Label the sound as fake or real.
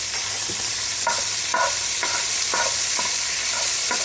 fake